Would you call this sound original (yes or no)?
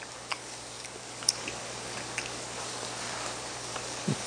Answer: no